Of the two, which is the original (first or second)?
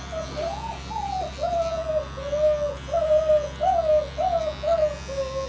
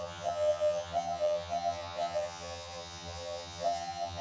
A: first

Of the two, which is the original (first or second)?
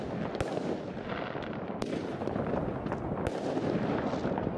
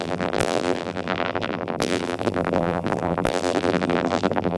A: first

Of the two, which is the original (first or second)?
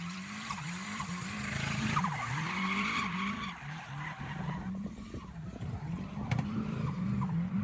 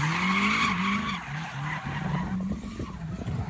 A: second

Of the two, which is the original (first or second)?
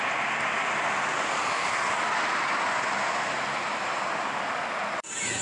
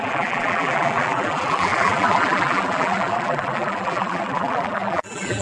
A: first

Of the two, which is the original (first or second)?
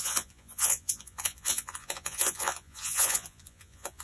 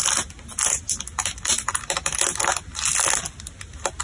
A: second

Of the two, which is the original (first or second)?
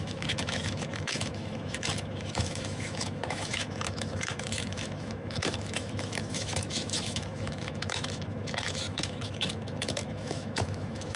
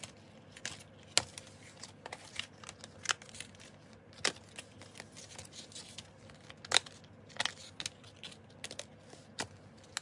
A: second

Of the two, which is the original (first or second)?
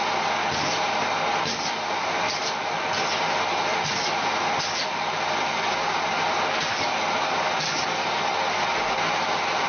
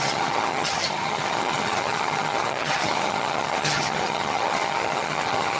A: first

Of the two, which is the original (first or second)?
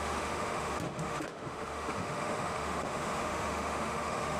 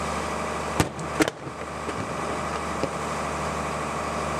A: second